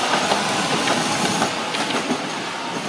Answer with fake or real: fake